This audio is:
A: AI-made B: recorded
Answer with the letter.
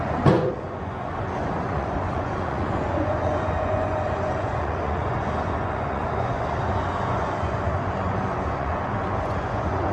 A